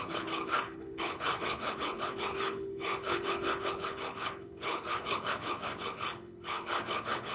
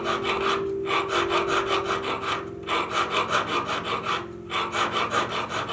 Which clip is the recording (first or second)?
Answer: second